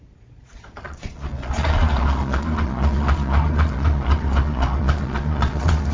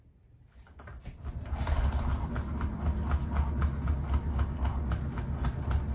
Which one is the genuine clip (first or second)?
second